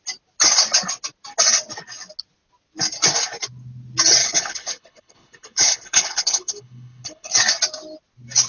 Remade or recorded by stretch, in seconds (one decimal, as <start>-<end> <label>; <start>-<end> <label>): 0.0-4.2 recorded; 4.2-7.3 remade; 7.3-8.5 recorded